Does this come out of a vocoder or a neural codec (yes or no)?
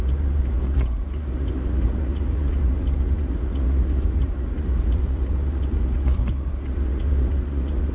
yes